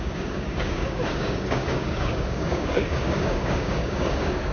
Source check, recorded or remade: remade